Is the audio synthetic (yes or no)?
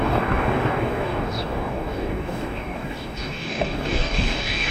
yes